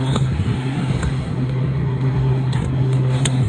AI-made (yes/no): yes